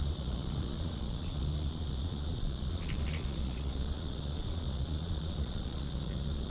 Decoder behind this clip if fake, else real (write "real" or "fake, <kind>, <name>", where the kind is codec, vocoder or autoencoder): fake, vocoder, Vocos